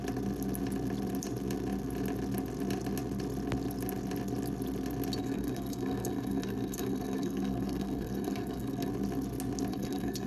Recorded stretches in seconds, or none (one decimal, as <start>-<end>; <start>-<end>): 0.0-5.2; 8.9-9.7